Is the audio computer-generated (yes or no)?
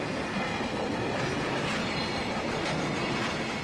no